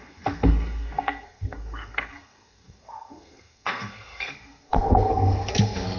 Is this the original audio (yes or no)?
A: no